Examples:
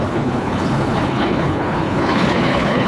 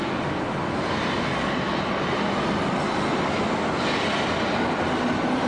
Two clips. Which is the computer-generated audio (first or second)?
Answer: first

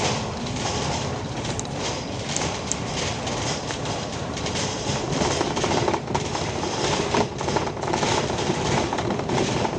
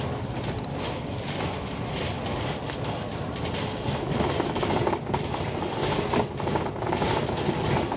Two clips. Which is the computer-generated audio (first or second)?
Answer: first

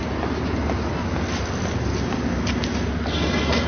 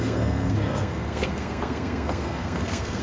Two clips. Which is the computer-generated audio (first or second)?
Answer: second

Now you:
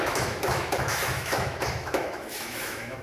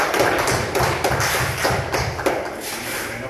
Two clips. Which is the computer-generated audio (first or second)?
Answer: first